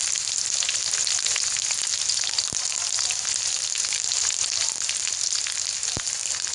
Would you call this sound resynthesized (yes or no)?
no